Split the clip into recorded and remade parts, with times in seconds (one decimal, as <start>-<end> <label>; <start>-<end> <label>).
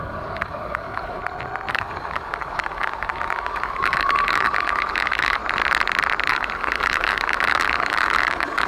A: 0.0-1.2 remade; 1.2-1.7 recorded; 1.7-5.4 remade; 5.4-6.3 recorded; 6.3-8.7 remade